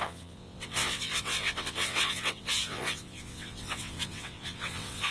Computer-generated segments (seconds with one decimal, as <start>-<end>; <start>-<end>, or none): 0.0-5.1